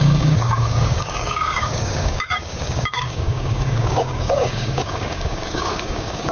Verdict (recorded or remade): remade